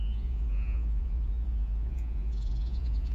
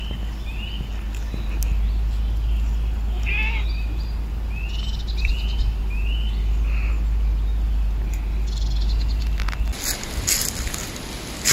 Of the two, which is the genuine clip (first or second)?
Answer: second